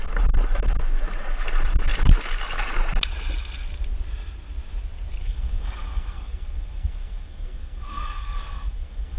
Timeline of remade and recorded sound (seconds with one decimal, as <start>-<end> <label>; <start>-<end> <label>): 0.0-5.2 recorded; 5.2-9.2 remade